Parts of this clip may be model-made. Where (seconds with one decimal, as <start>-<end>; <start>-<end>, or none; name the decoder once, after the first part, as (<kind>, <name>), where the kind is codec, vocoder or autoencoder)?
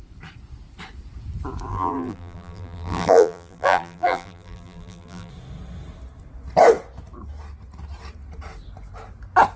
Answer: 1.7-5.3 (vocoder, BigVGAN v2)